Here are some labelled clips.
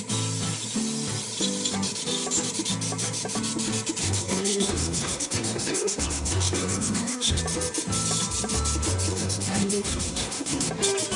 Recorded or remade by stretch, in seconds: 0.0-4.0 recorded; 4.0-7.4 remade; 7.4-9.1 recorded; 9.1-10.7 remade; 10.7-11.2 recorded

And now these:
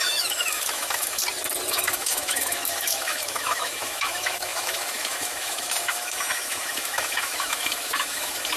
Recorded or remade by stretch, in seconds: 0.0-1.2 remade; 1.2-1.7 recorded; 1.7-8.6 remade